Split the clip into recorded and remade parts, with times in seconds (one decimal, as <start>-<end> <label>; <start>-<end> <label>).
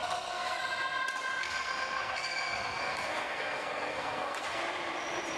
0.0-0.6 remade; 0.6-1.4 recorded; 1.4-4.6 remade; 4.6-5.4 recorded